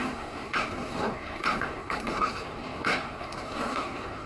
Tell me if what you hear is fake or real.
fake